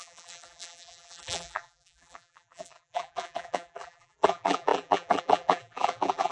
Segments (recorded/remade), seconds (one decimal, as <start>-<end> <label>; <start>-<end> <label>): 0.0-6.3 remade